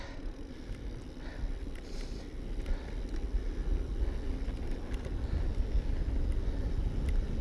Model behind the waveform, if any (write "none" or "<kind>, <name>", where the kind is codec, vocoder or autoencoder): none